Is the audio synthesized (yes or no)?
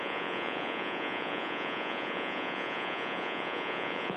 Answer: yes